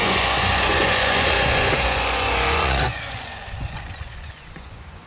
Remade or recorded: remade